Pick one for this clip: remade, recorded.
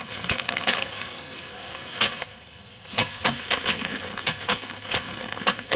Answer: remade